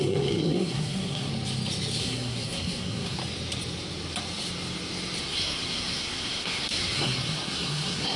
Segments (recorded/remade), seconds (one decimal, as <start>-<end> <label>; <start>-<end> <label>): 0.0-1.3 remade; 1.3-2.0 recorded; 2.0-3.2 remade; 3.2-5.2 recorded; 5.2-8.2 remade

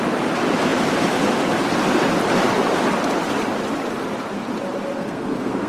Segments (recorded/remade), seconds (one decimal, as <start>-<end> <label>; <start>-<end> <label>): 0.0-5.0 recorded; 5.0-5.7 remade

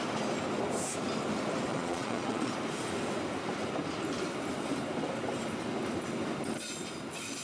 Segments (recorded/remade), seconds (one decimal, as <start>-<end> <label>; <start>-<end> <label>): 0.0-1.7 recorded; 1.7-2.5 remade; 2.5-7.4 recorded

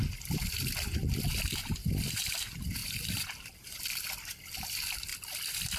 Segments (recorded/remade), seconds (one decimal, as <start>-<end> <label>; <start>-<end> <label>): 0.0-5.1 remade; 5.1-5.8 recorded

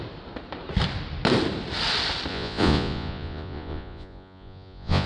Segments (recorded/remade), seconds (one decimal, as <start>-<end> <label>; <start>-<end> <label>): 0.0-2.3 recorded; 2.3-5.1 remade